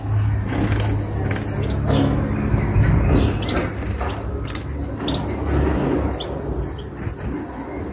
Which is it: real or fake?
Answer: real